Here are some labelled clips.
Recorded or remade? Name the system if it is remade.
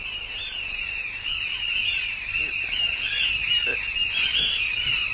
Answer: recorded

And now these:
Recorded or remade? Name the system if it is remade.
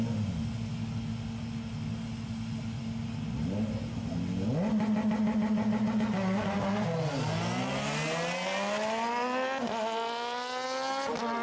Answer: recorded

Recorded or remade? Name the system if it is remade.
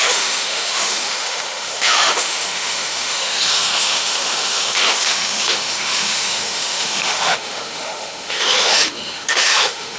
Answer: remade, autoencoder, DAC-VAE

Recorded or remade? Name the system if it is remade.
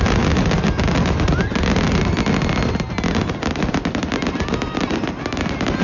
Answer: recorded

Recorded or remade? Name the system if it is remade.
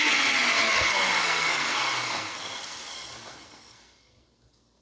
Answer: remade, codec, SNAC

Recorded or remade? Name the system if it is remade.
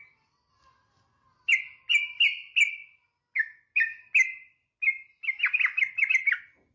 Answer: recorded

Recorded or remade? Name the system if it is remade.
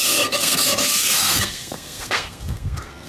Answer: remade, codec, SNAC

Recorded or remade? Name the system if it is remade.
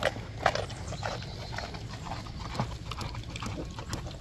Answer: recorded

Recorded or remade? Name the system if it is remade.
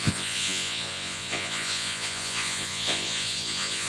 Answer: remade, vocoder, Vocos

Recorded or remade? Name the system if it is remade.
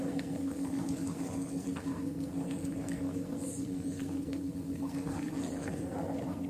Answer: remade, codec, SNAC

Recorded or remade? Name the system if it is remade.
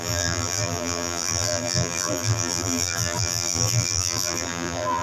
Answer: remade, vocoder, BigVGAN v2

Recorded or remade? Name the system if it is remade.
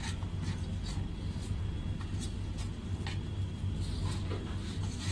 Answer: recorded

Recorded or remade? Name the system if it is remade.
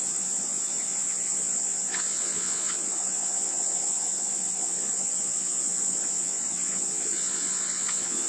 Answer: remade, vocoder, Vocos